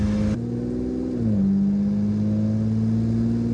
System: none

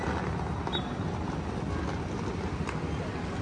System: none